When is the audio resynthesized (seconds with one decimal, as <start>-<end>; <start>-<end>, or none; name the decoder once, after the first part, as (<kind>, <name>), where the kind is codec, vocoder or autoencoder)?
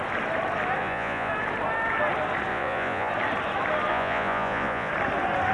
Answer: 0.8-1.3 (vocoder, Vocos); 2.5-3.1; 3.9-4.9